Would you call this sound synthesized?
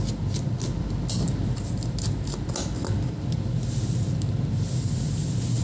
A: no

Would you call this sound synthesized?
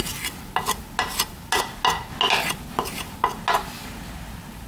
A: no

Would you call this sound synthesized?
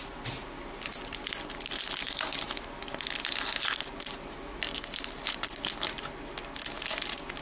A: no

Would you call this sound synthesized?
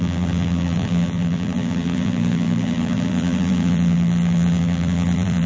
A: yes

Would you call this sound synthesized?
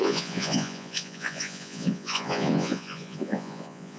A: yes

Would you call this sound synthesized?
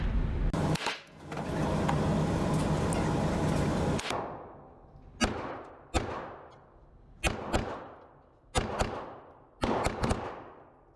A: no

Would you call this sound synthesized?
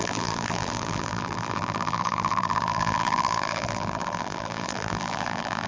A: yes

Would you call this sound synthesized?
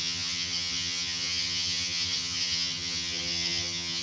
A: yes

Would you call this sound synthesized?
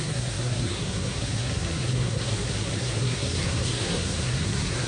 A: yes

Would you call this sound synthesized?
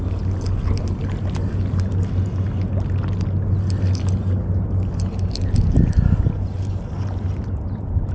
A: no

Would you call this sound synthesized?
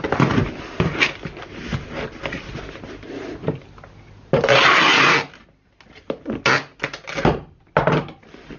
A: no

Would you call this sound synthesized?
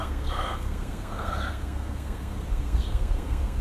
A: yes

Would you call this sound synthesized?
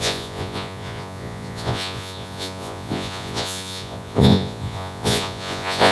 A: yes